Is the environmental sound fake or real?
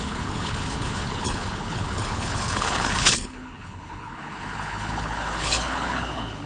fake